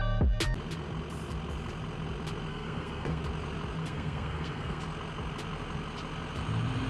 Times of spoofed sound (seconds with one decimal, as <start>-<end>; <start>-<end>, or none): 2.5-3.2; 3.8-4.8